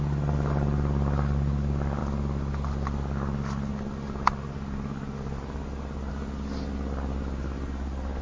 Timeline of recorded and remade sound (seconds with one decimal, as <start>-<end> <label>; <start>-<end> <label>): 0.0-8.2 recorded